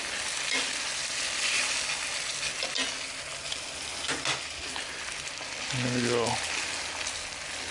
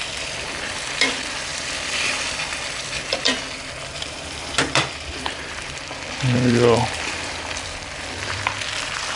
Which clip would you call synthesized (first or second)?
second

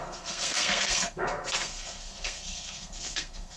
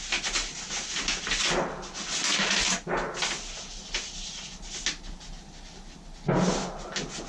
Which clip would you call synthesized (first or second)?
first